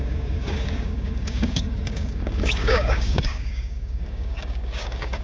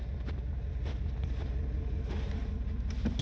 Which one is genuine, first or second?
second